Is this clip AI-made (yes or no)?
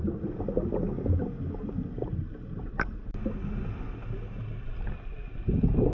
no